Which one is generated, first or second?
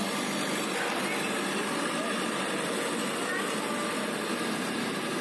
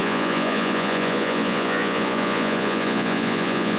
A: second